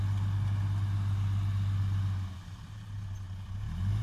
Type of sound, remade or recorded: recorded